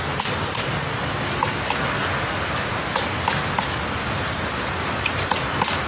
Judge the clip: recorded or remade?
recorded